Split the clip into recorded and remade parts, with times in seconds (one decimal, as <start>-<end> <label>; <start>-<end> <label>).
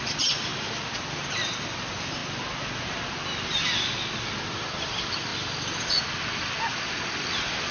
0.0-0.5 remade; 0.5-1.6 recorded; 1.6-2.2 remade; 2.2-4.1 recorded; 4.1-5.3 remade; 5.3-5.9 recorded; 5.9-7.7 remade